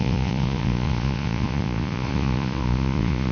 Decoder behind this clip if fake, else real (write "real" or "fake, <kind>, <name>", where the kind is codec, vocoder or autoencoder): fake, vocoder, Vocos